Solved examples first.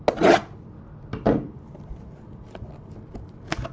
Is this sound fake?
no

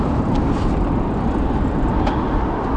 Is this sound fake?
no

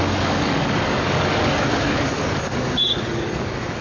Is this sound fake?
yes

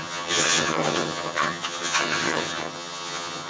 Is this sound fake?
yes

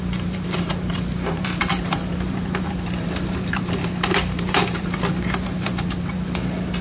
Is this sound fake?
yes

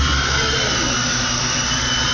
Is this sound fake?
no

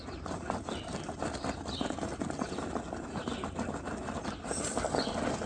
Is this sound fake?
no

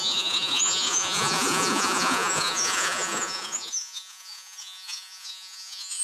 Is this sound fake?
yes